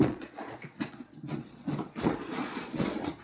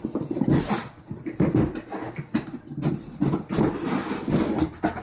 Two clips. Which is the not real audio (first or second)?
first